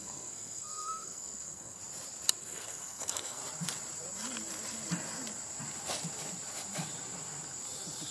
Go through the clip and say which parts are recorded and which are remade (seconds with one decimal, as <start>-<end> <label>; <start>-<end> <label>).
0.0-1.8 remade; 1.8-2.4 recorded; 2.4-3.4 remade; 3.4-8.1 recorded